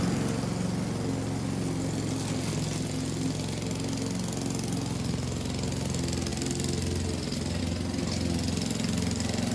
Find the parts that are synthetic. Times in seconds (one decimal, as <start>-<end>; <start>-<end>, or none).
none